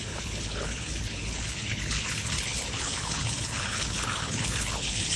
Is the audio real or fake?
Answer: fake